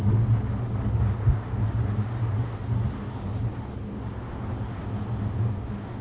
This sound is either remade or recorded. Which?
recorded